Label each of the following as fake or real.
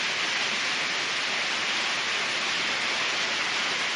real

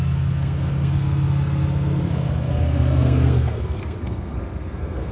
fake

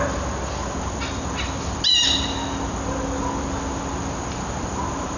real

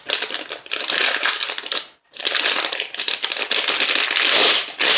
real